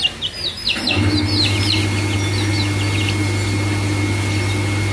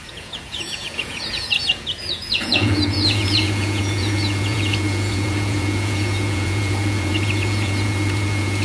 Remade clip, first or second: second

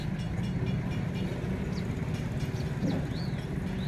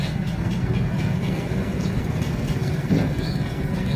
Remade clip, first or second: second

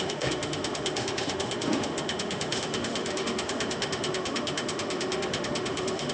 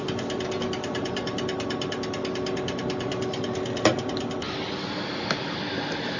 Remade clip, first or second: first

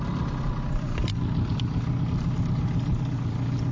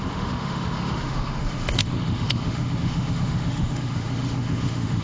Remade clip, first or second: second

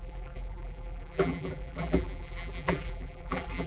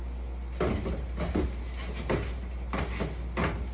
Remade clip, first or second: first